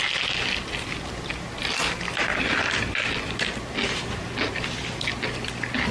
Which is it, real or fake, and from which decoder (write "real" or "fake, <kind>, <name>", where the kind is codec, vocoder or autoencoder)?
real